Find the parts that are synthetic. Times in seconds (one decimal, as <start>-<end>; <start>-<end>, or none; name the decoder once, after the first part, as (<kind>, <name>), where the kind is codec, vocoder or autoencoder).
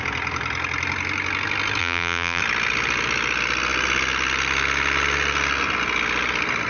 1.8-2.4 (vocoder, BigVGAN v2)